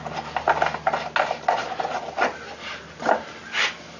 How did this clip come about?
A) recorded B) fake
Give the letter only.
A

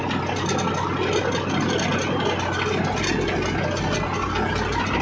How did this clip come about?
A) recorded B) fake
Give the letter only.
A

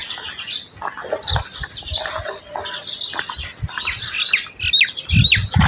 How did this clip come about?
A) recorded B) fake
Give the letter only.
A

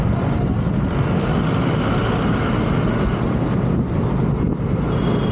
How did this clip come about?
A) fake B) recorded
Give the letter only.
B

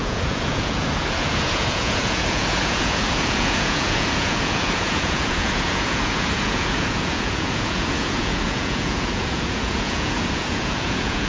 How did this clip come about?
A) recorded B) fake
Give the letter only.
B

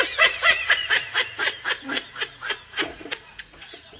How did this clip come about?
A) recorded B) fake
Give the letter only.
B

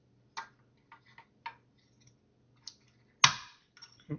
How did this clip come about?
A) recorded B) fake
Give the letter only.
A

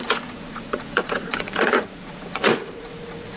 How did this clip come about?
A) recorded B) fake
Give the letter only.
B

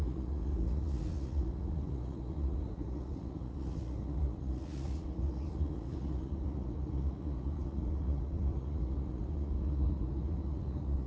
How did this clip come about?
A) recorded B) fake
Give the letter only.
B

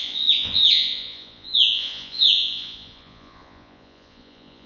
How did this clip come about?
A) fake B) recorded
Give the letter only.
A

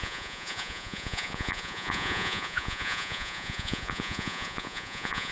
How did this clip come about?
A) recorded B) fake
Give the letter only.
B